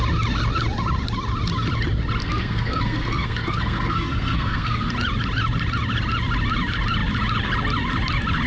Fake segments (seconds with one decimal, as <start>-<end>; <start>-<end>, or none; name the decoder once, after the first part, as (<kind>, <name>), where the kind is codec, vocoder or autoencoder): 2.2-4.9 (codec, SNAC)